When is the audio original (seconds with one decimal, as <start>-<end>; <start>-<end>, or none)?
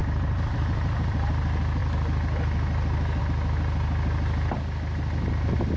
1.3-5.8